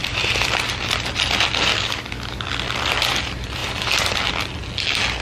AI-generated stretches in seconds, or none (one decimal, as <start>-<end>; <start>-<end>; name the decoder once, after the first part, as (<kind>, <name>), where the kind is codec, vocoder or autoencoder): 1.7-2.5 (codec, DAC)